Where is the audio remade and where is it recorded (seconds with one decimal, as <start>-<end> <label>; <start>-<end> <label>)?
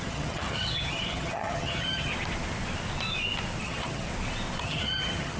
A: 0.0-2.1 remade; 2.1-3.6 recorded; 3.6-4.1 remade; 4.1-4.6 recorded; 4.6-5.4 remade